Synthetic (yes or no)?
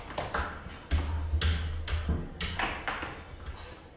no